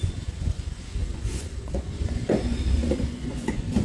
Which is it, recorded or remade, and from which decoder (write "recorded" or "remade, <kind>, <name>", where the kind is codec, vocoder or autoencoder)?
remade, vocoder, Vocos